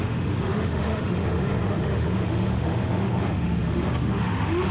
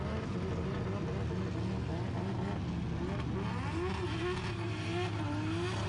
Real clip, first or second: second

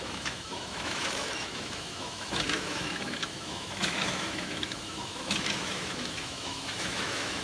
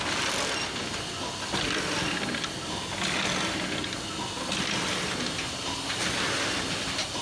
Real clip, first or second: second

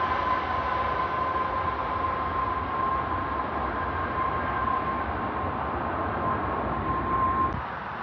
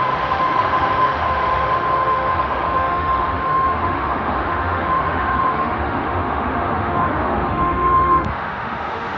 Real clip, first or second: first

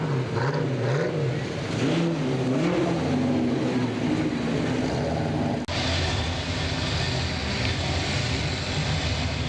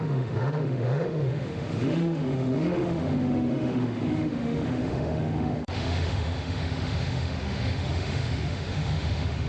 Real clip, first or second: first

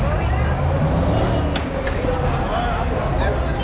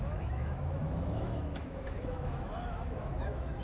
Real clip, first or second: first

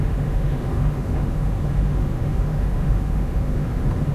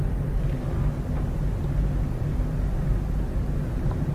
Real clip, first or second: second